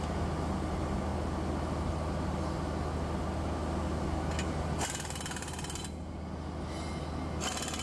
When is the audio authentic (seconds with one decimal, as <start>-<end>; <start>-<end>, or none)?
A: 0.0-7.8